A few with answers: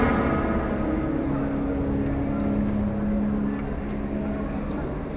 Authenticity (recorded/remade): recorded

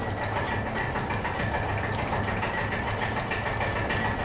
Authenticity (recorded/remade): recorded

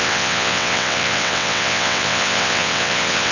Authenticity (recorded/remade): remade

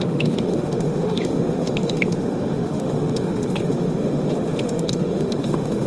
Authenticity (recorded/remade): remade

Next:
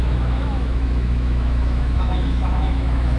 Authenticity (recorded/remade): remade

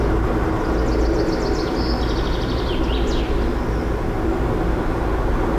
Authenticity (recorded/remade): recorded